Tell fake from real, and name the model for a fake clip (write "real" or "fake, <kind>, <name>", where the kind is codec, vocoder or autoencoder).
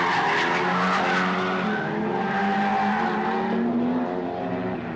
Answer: real